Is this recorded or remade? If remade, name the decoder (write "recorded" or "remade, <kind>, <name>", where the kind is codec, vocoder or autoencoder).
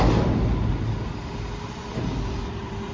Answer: recorded